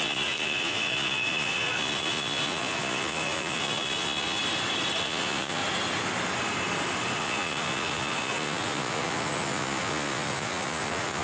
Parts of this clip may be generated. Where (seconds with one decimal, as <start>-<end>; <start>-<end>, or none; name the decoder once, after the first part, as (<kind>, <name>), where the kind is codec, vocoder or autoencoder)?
0.0-4.4 (vocoder, Vocos); 5.0-5.6; 7.2-11.2